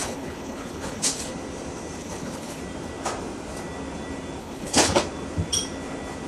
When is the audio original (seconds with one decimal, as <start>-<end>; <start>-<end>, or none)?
1.3-2.0; 2.6-4.4; 5.0-6.3